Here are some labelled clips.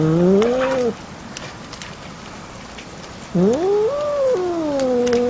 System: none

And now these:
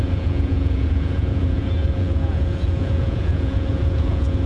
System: vocoder, Vocos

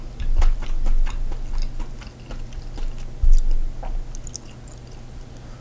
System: none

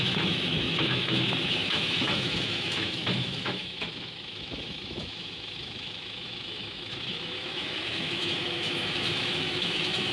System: autoencoder, DAC-VAE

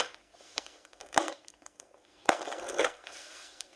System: codec, SNAC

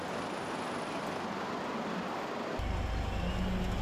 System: none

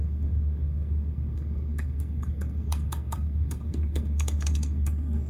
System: codec, SNAC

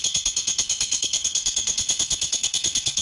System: codec, SNAC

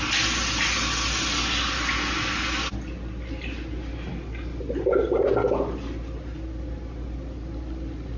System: none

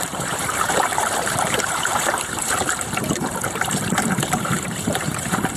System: vocoder, BigVGAN v2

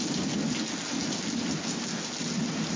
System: none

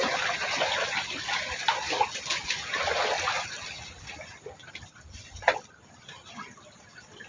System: none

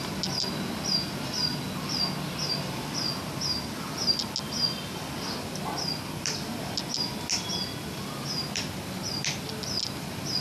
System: none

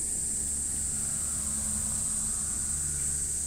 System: none